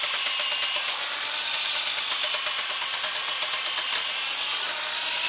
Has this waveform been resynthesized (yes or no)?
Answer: no